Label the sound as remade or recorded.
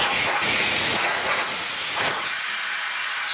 remade